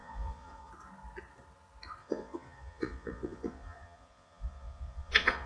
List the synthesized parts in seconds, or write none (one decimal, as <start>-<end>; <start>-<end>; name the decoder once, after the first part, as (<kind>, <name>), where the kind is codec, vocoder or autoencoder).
0.0-0.7 (vocoder, Vocos); 2.0-5.5